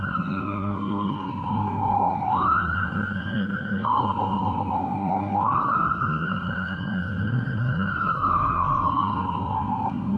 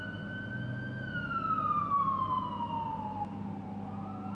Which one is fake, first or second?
first